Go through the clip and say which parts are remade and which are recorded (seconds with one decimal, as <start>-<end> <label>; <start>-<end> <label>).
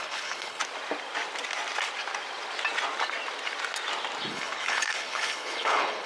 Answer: 0.0-0.6 remade; 0.6-4.3 recorded; 4.3-6.1 remade